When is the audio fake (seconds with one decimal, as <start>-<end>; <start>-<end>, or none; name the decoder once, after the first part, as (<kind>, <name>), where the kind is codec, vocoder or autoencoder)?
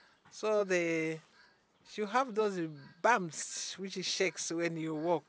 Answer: none